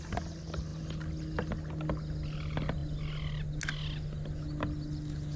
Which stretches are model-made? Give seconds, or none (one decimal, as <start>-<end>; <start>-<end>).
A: none